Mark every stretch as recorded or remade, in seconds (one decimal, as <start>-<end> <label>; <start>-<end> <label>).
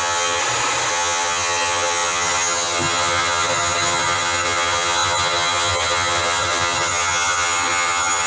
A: 0.0-0.4 remade; 0.4-0.9 recorded; 0.9-8.3 remade